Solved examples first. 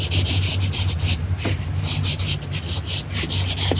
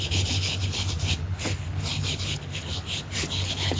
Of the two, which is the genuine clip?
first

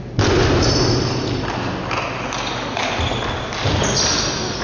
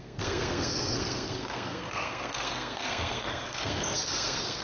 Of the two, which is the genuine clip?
first